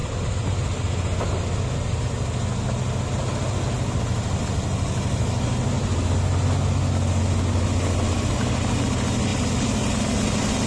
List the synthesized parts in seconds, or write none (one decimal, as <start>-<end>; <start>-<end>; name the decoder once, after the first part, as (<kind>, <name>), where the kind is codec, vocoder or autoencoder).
none